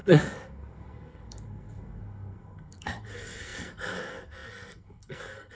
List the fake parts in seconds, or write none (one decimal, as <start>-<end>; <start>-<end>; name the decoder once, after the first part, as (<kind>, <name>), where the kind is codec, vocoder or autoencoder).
0.0-5.5 (codec, SNAC)